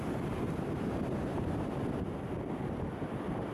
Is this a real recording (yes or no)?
yes